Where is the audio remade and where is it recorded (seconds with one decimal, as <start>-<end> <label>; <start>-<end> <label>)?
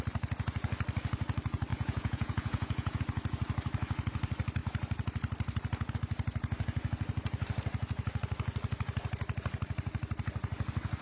0.0-1.7 recorded; 1.7-3.0 remade; 3.0-11.0 recorded